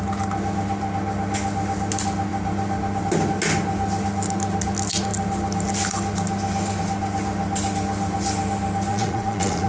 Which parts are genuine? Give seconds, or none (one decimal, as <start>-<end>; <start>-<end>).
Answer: 0.0-8.9